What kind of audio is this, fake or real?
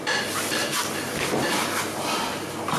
real